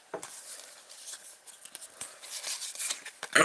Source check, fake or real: real